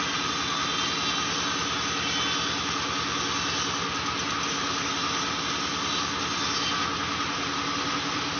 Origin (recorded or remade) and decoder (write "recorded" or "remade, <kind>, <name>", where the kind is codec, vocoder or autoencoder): recorded